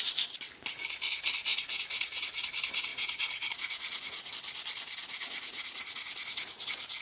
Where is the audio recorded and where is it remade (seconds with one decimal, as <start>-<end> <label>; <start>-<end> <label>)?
0.0-1.5 recorded; 1.5-2.5 remade; 2.5-2.9 recorded; 2.9-4.3 remade; 4.3-5.0 recorded; 5.0-6.6 remade; 6.6-7.0 recorded